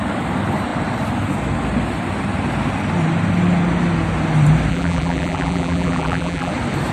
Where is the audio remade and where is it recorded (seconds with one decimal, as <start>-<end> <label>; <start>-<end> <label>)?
0.0-4.7 recorded; 4.7-6.5 remade; 6.5-6.9 recorded